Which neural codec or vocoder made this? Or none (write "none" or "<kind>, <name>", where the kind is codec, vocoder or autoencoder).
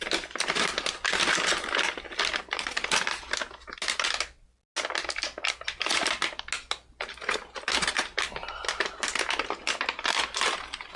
none